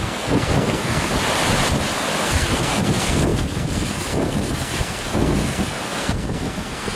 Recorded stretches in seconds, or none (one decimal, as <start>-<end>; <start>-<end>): 1.1-2.2